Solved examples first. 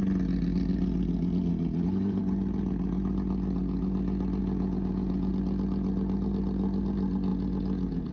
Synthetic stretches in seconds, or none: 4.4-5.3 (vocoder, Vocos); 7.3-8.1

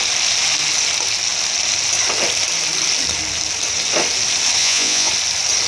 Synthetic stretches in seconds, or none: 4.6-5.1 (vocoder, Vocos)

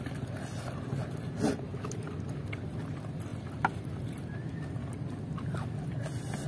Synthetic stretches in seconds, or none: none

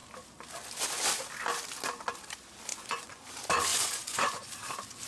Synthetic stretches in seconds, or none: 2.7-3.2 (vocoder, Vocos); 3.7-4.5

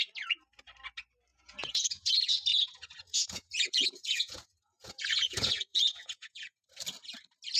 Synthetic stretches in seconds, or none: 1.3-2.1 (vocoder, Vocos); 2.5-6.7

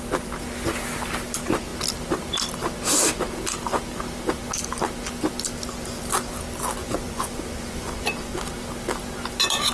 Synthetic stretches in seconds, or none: 6.8-8.1 (vocoder, Vocos)

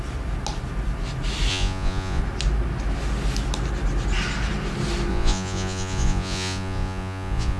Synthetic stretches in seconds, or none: 1.5-2.2 (vocoder, Vocos); 5.1-7.6